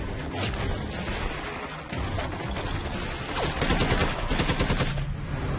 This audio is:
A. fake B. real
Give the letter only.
B